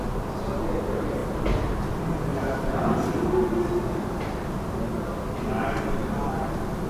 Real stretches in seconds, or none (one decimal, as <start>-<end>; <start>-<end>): 0.0-2.3; 3.0-6.9